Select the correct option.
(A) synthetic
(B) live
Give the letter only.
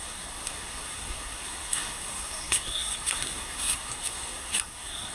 A